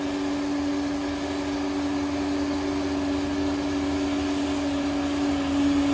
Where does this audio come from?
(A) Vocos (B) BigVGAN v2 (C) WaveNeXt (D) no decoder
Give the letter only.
D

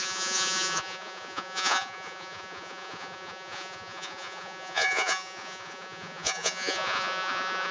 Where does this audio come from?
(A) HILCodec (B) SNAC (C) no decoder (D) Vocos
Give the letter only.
D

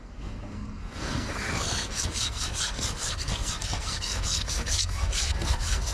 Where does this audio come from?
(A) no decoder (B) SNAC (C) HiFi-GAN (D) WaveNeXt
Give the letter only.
B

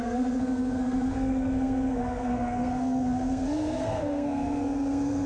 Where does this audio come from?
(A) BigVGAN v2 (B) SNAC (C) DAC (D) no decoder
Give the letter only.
B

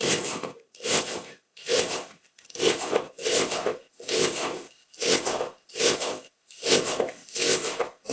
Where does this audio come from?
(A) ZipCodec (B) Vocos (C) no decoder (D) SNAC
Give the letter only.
A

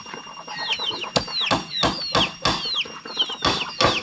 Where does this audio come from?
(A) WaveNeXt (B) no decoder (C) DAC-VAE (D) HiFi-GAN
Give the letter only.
B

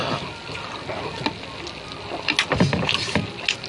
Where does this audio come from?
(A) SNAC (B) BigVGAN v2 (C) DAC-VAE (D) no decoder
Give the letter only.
D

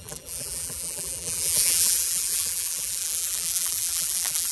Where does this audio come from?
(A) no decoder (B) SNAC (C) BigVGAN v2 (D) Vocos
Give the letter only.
C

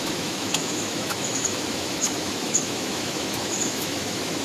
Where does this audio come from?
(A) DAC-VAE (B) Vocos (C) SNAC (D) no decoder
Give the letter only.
A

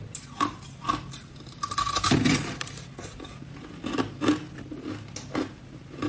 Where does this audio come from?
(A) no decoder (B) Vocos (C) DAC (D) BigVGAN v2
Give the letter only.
A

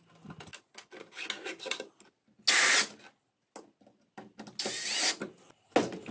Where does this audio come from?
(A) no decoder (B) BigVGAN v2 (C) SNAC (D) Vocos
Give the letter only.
A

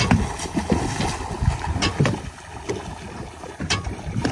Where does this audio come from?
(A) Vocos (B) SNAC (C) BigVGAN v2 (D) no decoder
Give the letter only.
D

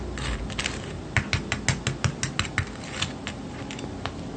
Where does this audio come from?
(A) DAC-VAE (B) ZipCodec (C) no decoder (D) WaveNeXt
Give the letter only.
C